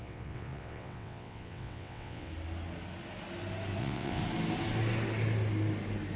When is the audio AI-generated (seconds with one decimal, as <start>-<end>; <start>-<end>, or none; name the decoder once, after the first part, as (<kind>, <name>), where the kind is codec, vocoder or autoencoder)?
0.0-2.3 (vocoder, WaveNeXt); 3.8-4.2